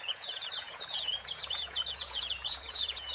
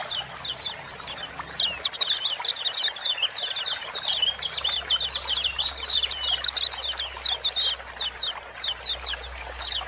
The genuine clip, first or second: second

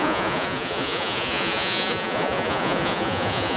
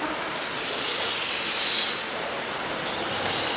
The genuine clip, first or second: second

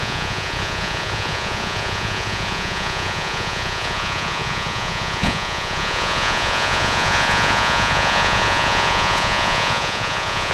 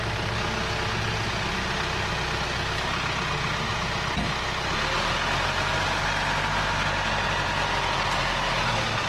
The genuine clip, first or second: second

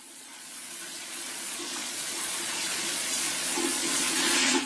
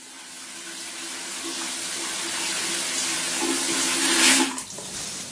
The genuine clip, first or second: second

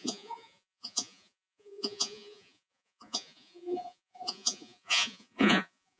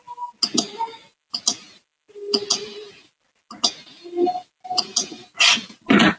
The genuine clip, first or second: second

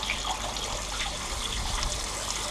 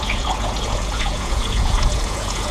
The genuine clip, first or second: first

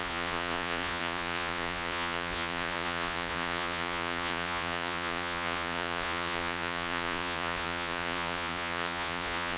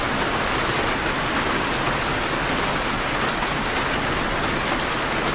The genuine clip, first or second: second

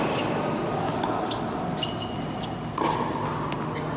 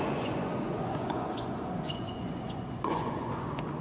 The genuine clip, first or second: first